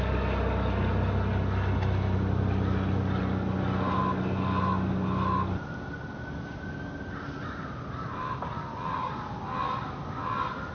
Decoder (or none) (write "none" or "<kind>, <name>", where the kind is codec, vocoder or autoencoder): none